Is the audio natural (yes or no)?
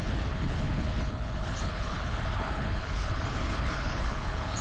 no